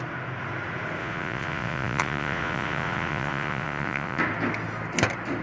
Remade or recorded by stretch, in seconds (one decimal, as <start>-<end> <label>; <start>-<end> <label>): 0.0-1.0 recorded; 1.0-4.2 remade; 4.2-5.4 recorded